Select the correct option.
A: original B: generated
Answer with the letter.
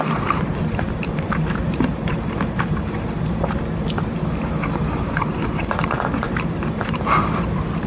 B